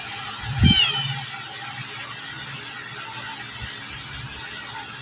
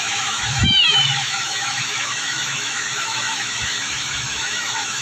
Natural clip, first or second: first